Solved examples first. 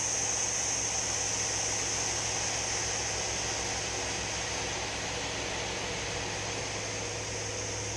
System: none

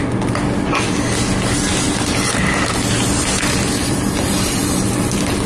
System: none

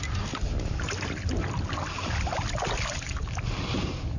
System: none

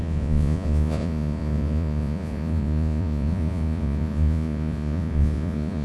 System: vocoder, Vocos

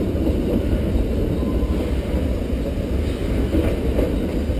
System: none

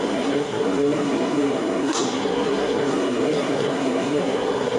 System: codec, SNAC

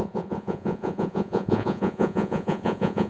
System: vocoder, Vocos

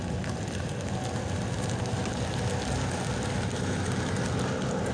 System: none